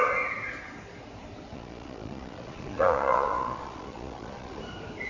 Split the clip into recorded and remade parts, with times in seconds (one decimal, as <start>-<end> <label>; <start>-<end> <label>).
0.0-1.5 recorded; 1.5-4.6 remade; 4.6-5.1 recorded